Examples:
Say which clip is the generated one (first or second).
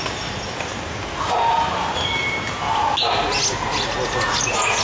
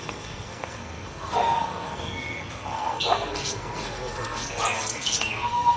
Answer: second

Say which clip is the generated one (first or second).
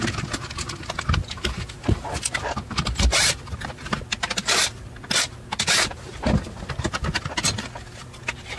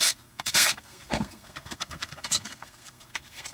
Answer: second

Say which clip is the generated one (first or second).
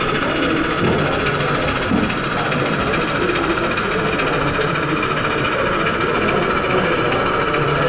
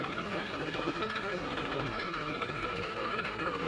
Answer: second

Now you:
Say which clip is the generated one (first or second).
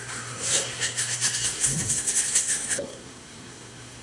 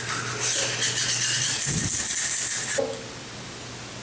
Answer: first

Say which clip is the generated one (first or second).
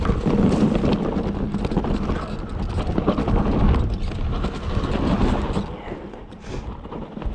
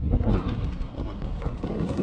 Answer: second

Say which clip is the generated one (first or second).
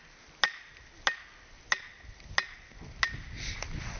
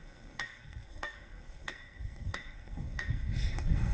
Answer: second